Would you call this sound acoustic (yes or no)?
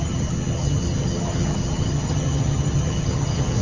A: no